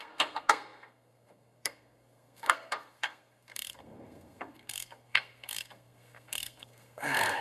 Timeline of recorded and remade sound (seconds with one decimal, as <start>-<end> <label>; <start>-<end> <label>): 0.0-7.4 remade